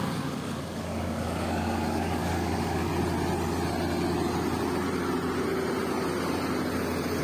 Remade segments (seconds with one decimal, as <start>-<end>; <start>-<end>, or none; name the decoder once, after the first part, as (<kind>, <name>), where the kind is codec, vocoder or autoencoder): 0.0-2.9 (codec, DAC)